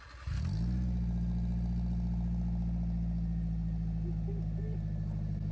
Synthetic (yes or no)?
no